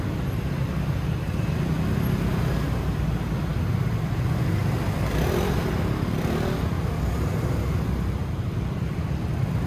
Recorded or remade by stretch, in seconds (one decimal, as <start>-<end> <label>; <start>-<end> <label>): 0.0-9.7 recorded